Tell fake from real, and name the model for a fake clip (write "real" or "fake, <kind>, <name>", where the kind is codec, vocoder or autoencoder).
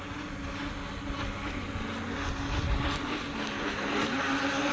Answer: real